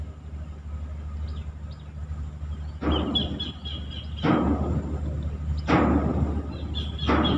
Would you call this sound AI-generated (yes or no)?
no